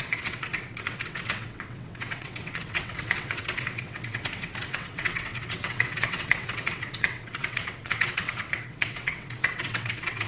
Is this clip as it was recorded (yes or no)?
no